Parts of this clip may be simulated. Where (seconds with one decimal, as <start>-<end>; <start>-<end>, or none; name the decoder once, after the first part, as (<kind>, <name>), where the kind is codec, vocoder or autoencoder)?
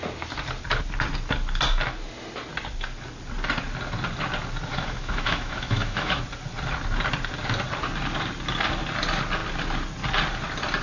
4.7-6.2 (autoencoder, DAC-VAE)